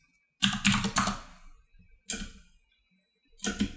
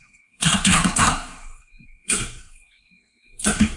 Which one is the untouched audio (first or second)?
first